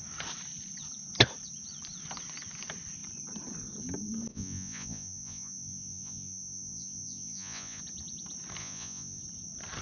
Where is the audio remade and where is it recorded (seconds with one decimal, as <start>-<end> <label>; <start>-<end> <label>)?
0.0-4.3 recorded; 4.3-7.8 remade; 7.8-8.6 recorded; 8.6-9.2 remade; 9.2-9.8 recorded